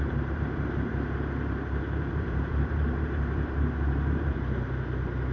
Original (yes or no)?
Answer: no